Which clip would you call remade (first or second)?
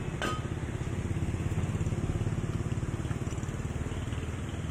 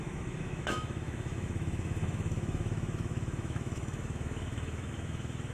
second